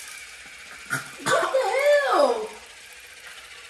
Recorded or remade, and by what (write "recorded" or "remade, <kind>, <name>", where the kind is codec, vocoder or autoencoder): recorded